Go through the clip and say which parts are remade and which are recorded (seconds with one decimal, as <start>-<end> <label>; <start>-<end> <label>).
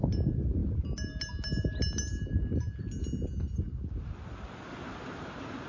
0.0-5.7 recorded